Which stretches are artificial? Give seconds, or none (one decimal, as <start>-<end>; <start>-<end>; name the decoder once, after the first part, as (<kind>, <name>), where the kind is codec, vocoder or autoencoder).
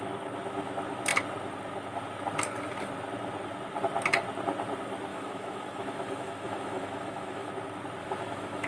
5.1-7.5 (autoencoder, DAC-VAE); 8.0-8.7